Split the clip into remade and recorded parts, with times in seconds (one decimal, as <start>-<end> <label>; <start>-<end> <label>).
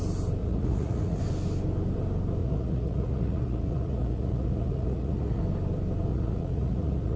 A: 0.0-0.4 recorded; 0.4-1.2 remade; 1.2-2.4 recorded; 2.4-5.4 remade; 5.4-6.1 recorded; 6.1-7.2 remade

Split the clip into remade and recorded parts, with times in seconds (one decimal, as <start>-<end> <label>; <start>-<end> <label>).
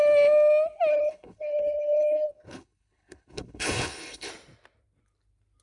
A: 0.0-0.9 recorded; 0.9-4.3 remade; 4.3-5.6 recorded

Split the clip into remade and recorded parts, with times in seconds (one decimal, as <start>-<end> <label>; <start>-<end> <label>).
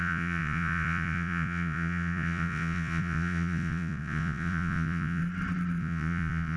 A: 0.0-5.2 remade; 5.2-5.8 recorded; 5.8-6.6 remade